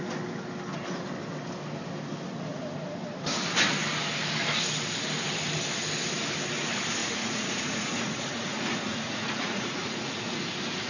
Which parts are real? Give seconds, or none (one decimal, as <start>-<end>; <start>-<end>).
0.0-7.0; 10.1-10.9